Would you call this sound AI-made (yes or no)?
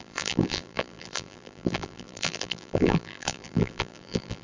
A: yes